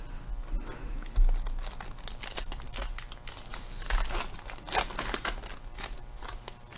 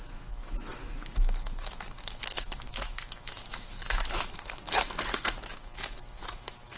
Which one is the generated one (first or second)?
second